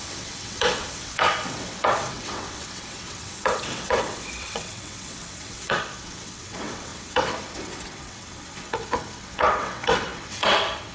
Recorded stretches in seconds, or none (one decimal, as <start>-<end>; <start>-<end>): none